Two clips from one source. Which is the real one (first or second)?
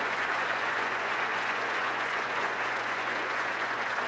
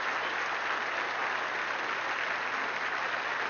second